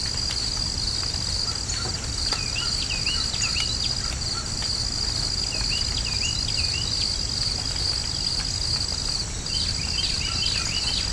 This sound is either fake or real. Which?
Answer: real